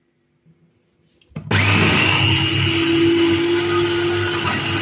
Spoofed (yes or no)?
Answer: no